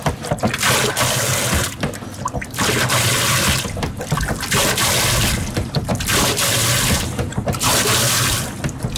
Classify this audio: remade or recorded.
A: recorded